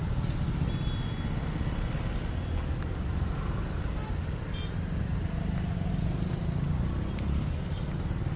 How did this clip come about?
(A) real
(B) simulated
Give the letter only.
A